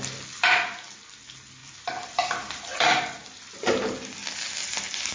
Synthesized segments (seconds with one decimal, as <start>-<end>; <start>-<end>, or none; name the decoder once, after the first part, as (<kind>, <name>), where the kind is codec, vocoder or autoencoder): 1.6-3.5 (vocoder, BigVGAN v2)